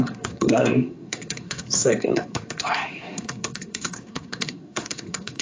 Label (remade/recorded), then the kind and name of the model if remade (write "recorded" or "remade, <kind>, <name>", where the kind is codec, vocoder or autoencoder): remade, codec, SNAC